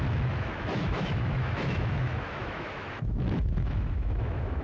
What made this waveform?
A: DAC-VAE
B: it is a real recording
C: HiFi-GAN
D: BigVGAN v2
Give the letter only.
A